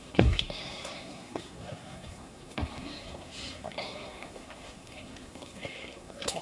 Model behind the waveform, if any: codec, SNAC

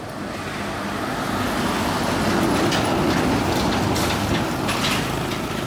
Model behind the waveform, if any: none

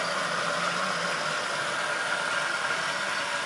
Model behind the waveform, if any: none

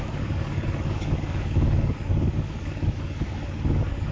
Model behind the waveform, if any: codec, DAC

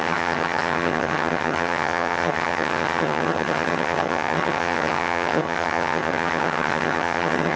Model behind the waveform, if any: vocoder, HiFi-GAN